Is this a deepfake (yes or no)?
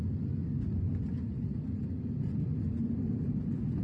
no